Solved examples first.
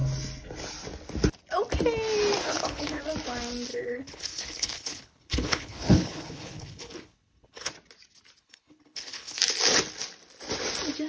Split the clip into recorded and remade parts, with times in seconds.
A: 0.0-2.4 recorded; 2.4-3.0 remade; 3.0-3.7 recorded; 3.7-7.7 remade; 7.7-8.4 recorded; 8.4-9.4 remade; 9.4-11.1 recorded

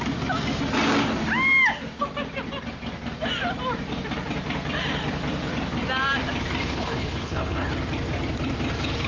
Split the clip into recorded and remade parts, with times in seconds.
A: 0.0-6.6 recorded; 6.6-7.7 remade; 7.7-9.1 recorded

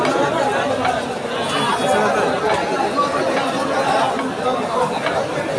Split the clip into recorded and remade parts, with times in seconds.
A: 0.0-5.6 recorded

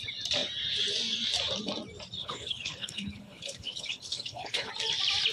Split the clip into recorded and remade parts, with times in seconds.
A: 0.0-2.2 recorded; 2.2-4.7 remade; 4.7-5.3 recorded

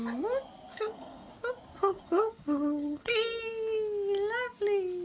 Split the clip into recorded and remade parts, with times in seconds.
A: 0.0-0.7 recorded; 0.7-1.3 remade; 1.3-1.8 recorded; 1.8-3.1 remade; 3.1-5.0 recorded